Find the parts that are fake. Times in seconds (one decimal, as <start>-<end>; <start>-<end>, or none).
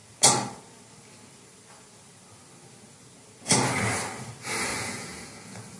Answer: 4.7-5.8